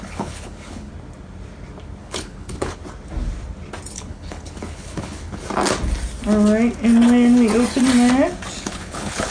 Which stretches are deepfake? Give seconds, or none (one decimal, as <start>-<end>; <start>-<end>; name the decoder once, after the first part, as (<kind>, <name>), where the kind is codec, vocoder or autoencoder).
0.0-0.9 (codec, HILCodec); 2.0-2.8; 3.9-5.4; 8.6-9.3